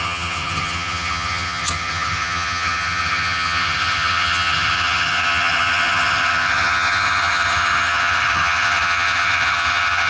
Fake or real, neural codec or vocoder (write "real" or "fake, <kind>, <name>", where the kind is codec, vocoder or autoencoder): fake, vocoder, HiFi-GAN